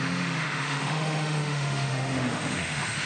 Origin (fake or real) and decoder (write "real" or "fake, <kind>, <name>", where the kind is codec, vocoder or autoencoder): fake, autoencoder, DAC-VAE